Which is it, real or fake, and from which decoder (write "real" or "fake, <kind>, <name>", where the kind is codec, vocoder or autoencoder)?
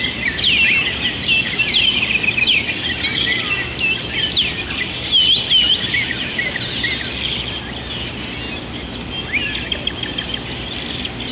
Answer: real